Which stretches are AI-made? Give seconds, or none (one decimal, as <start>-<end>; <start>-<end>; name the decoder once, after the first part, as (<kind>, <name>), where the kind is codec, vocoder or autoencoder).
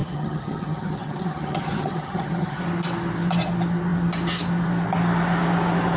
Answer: 0.0-2.6 (vocoder, HiFi-GAN)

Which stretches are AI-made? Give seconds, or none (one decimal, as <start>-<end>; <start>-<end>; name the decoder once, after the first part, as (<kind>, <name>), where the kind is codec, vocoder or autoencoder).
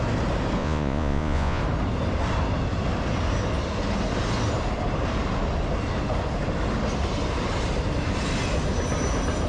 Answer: 0.6-1.6 (vocoder, Vocos)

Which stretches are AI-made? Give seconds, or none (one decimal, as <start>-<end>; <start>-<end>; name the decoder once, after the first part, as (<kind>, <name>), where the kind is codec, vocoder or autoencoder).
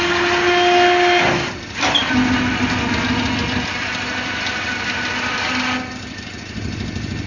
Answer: none